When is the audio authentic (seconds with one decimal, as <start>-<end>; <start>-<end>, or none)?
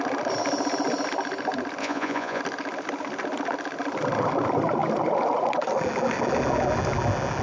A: 0.0-1.8; 2.4-7.4